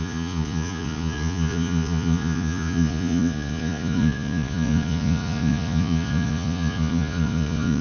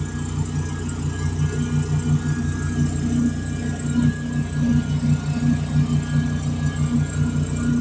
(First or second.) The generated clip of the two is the first